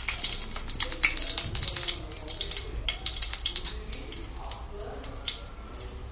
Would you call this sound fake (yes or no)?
no